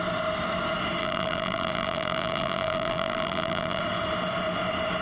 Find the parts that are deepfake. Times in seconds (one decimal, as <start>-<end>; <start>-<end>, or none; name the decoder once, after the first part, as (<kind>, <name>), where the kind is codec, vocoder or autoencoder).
1.0-3.8 (vocoder, BigVGAN v2)